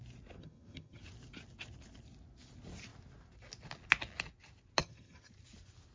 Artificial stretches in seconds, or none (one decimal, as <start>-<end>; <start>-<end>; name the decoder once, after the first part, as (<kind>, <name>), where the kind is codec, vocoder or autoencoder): 0.4-1.0 (vocoder, HiFi-GAN); 4.8-5.3